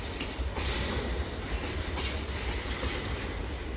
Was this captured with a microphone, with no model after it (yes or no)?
yes